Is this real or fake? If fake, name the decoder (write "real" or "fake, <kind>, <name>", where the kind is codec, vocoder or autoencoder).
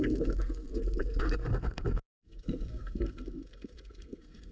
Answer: fake, codec, SNAC